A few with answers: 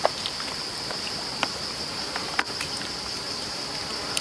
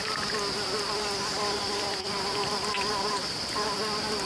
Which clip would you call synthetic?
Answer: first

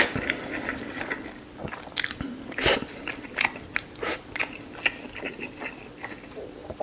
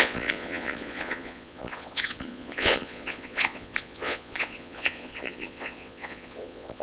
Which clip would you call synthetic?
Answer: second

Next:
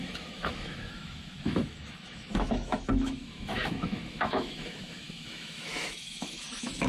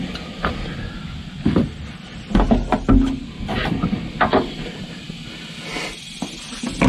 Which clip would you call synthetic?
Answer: first